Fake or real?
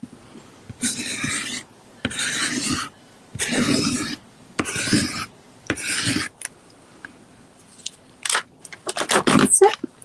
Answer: real